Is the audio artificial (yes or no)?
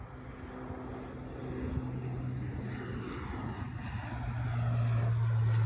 no